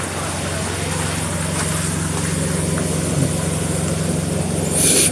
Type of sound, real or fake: real